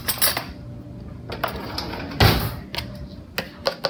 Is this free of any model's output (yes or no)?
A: yes